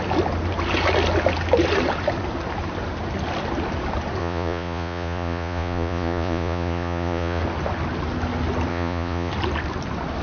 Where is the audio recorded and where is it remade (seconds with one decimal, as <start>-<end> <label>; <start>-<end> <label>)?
0.0-4.2 recorded; 4.2-7.4 remade; 7.4-8.7 recorded; 8.7-9.3 remade; 9.3-10.2 recorded